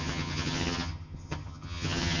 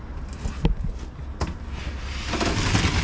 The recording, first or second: second